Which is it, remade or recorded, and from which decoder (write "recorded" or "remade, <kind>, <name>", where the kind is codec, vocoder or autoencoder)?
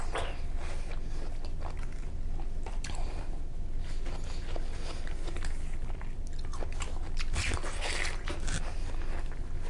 recorded